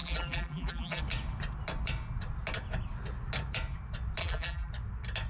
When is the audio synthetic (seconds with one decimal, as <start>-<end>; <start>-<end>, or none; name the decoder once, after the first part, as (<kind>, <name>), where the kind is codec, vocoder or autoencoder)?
0.0-1.0 (vocoder, BigVGAN v2); 4.2-4.7